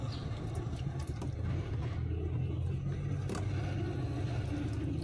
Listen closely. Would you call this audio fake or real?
real